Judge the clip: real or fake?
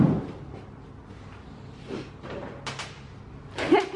real